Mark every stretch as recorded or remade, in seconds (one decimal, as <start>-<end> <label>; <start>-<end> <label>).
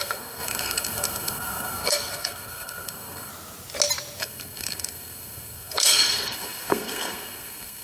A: 0.0-3.3 remade; 3.3-4.2 recorded; 4.2-7.8 remade